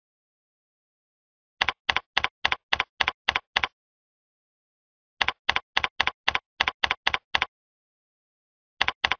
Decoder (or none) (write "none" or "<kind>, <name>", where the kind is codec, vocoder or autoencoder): none